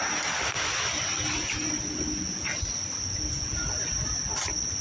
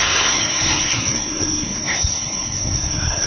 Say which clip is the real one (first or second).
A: first